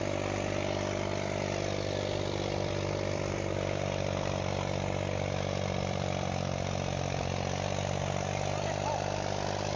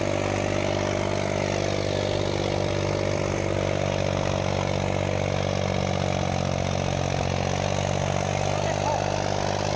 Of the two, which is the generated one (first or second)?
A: first